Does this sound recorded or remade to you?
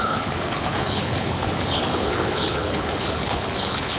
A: remade